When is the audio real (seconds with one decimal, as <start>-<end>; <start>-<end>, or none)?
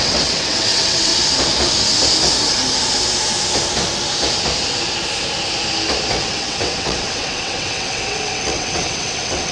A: 1.1-6.1